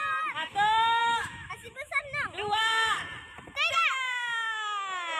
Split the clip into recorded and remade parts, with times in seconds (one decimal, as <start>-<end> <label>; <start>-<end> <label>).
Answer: 0.0-1.0 recorded; 1.0-2.0 remade; 2.0-5.2 recorded